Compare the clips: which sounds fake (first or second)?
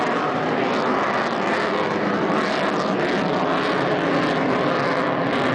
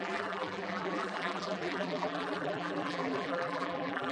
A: second